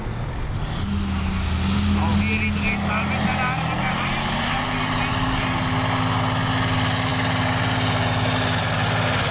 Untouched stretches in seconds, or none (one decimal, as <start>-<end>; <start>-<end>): 0.0-9.3